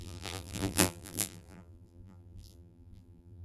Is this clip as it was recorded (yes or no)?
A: no